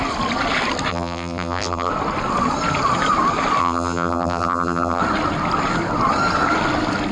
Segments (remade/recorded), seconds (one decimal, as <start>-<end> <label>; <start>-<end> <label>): 0.0-0.9 recorded; 0.9-1.9 remade; 1.9-3.6 recorded; 3.6-5.0 remade; 5.0-7.1 recorded